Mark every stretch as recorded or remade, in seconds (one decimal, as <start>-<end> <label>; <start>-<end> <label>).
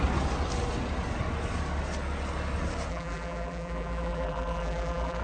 0.0-2.9 recorded; 2.9-5.2 remade